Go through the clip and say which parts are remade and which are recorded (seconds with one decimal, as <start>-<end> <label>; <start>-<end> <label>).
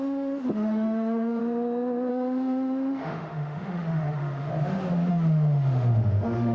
0.0-1.4 remade; 1.4-2.1 recorded; 2.1-4.5 remade; 4.5-5.1 recorded; 5.1-6.5 remade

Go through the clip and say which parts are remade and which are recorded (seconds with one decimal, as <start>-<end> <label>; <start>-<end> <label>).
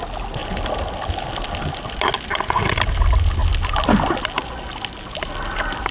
0.0-5.9 recorded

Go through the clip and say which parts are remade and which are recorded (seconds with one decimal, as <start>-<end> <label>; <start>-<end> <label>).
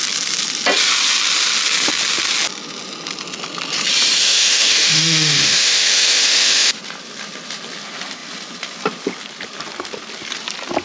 0.0-4.2 recorded; 4.2-6.8 remade; 6.8-10.8 recorded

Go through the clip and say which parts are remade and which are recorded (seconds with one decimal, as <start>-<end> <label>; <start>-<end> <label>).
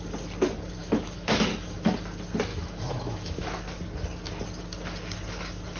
0.0-0.8 recorded; 0.8-1.9 remade; 1.9-2.5 recorded; 2.5-3.6 remade; 3.6-5.8 recorded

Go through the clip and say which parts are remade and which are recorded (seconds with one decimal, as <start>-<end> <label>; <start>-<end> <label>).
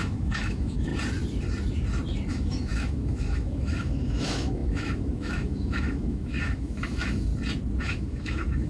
0.0-0.9 remade; 0.9-2.3 recorded; 2.3-7.3 remade; 7.3-7.8 recorded; 7.8-8.7 remade